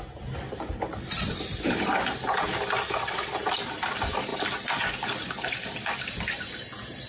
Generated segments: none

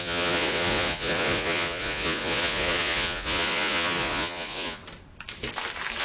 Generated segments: 0.0-4.8

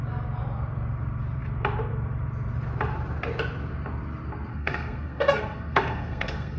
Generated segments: 4.5-6.6